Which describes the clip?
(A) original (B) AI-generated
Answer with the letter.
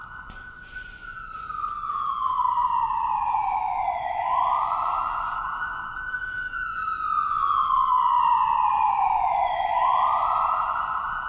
B